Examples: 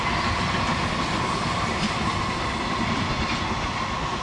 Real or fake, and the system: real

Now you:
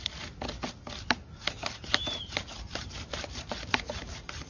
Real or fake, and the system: real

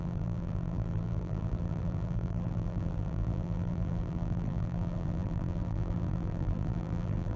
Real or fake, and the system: fake, vocoder, BigVGAN v2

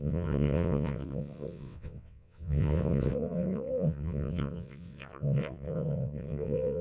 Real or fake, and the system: fake, vocoder, WaveNeXt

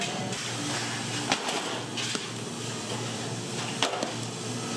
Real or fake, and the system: real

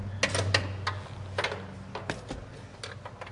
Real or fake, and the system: real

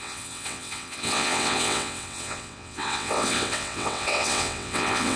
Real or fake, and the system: fake, vocoder, WaveNeXt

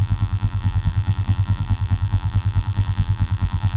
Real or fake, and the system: fake, vocoder, BigVGAN v2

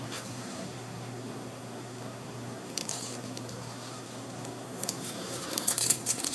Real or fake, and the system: fake, codec, SNAC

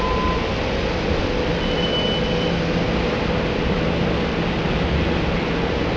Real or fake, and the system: real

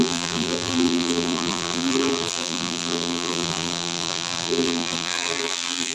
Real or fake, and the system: fake, vocoder, BigVGAN v2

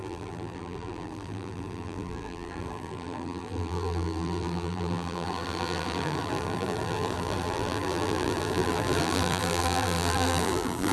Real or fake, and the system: fake, vocoder, BigVGAN v2